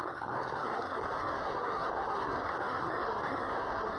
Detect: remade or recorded remade